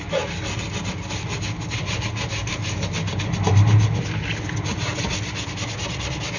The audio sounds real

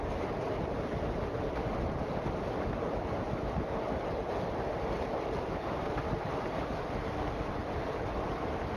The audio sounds real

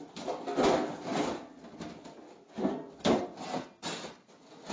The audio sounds real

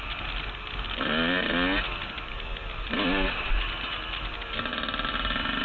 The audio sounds real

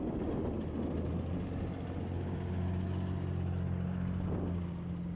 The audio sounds real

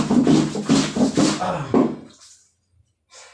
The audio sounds real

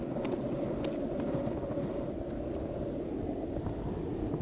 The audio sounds real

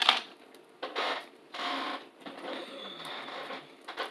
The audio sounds real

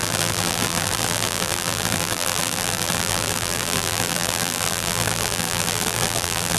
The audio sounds fake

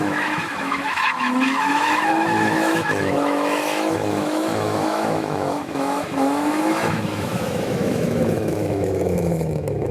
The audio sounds fake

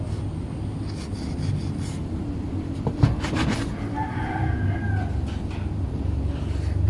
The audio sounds real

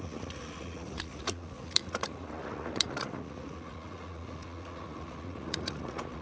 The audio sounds fake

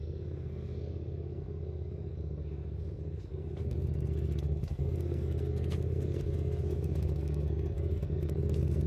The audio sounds fake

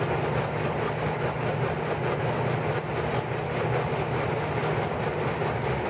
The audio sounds real